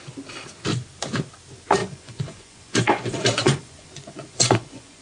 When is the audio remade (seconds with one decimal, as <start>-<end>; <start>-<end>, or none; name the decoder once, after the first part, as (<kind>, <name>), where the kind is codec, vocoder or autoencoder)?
1.8-5.0 (vocoder, Vocos)